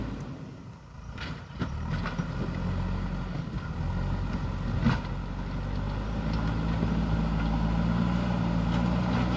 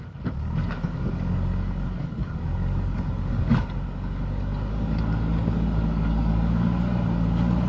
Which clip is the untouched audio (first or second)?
first